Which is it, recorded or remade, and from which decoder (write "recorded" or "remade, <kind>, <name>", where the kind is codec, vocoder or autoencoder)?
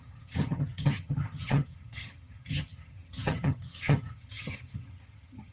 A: remade, vocoder, HiFi-GAN